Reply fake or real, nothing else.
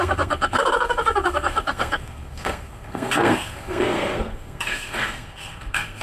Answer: fake